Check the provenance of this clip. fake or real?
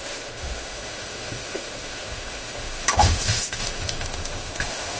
fake